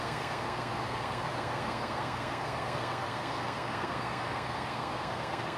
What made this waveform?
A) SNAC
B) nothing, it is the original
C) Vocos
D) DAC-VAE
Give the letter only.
A